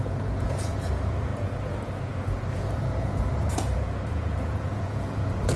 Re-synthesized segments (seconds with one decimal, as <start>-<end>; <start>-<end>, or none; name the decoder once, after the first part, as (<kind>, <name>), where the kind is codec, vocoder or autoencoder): 0.0-5.6 (vocoder, Vocos)